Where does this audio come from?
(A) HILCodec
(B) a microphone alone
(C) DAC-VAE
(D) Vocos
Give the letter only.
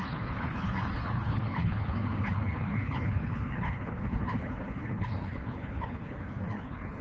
A